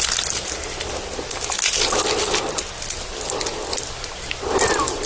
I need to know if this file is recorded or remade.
recorded